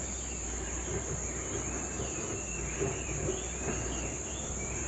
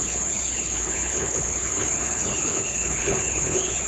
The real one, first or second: first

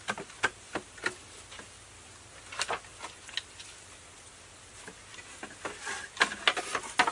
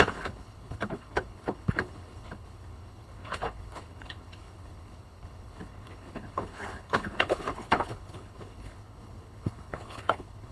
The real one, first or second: first